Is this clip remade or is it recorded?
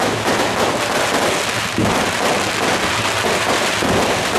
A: recorded